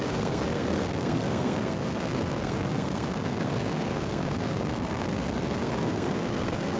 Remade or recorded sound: remade